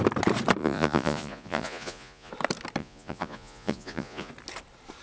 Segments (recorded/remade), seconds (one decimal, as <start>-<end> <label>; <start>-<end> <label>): 0.0-0.6 recorded; 0.6-2.3 remade; 2.3-2.8 recorded; 2.8-4.3 remade; 4.3-5.0 recorded

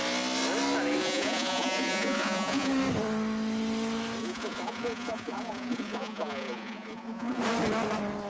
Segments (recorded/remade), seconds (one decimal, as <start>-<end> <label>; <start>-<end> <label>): 0.0-1.0 recorded; 1.0-2.7 remade; 2.7-4.2 recorded; 4.2-7.4 remade; 7.4-8.3 recorded

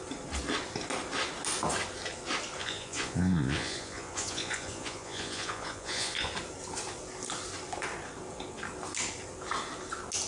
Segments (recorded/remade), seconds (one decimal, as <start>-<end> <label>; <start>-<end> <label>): 0.0-2.6 recorded; 2.6-6.3 remade; 6.3-10.3 recorded